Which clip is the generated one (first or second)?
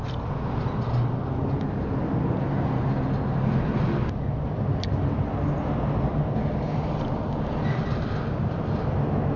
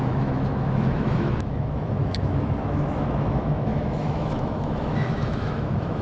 second